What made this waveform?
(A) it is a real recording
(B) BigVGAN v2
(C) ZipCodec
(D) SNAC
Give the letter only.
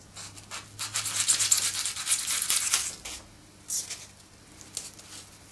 A